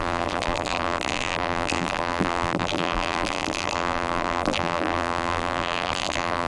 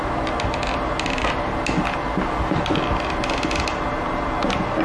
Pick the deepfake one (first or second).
first